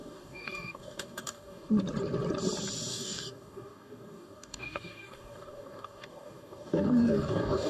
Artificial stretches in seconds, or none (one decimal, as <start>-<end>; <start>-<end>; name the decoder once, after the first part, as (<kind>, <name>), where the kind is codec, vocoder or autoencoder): 0.0-1.7 (codec, DAC); 2.9-7.7